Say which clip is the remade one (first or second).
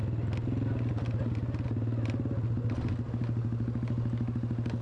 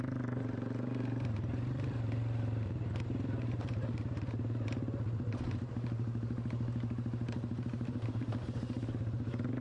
second